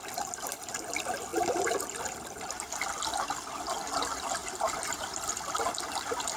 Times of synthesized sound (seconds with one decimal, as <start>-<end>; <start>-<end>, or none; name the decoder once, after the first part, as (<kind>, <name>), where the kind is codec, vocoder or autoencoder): 4.4-5.3 (vocoder, BigVGAN v2)